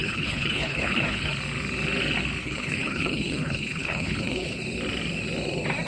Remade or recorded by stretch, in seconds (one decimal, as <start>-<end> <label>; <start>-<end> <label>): 0.0-1.3 remade; 1.3-2.4 recorded; 2.4-4.6 remade; 4.6-5.9 recorded